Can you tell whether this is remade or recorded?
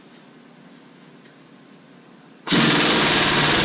recorded